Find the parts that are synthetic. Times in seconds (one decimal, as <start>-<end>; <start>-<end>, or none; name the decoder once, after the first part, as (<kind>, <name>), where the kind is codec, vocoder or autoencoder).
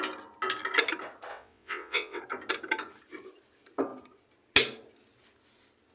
1.3-2.2 (vocoder, WaveNeXt)